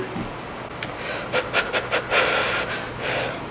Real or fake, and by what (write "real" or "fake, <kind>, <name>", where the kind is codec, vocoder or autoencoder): real